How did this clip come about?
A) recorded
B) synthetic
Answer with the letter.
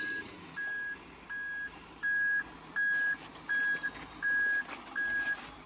A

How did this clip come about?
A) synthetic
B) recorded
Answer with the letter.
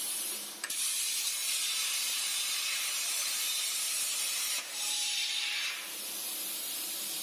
A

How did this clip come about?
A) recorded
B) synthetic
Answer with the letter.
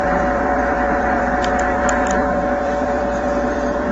B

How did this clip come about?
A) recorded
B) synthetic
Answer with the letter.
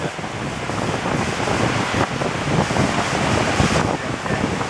A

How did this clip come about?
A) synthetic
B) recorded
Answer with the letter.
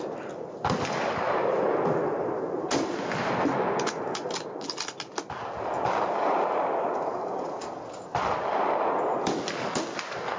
B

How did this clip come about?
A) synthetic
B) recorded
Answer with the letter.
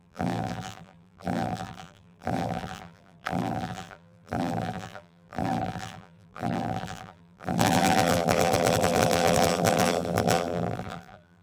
A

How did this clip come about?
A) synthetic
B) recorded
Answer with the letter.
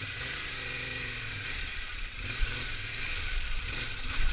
A